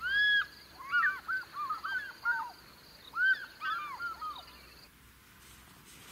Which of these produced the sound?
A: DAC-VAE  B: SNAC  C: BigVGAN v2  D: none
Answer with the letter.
D